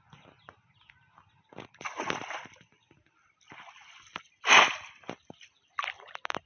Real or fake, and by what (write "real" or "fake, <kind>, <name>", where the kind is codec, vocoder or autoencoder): real